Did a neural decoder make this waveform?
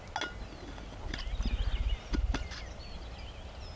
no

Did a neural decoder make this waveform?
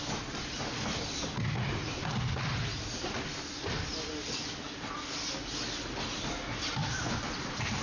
no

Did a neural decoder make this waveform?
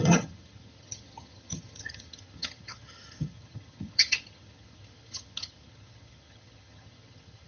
yes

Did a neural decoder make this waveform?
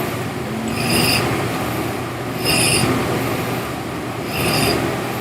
no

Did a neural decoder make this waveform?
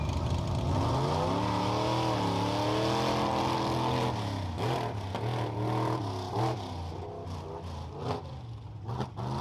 no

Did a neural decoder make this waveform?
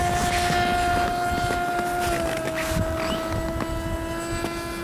no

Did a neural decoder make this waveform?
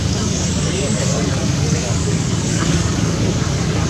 yes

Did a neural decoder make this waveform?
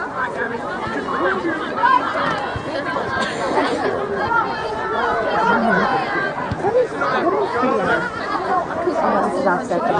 yes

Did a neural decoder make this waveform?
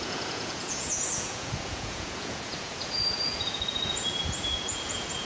yes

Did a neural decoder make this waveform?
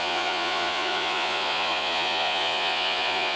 yes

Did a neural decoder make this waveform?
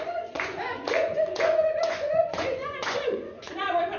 yes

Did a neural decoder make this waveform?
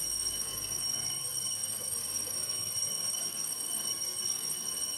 yes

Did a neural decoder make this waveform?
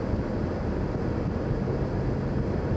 no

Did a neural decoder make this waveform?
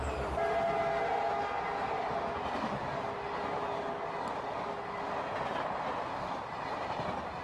no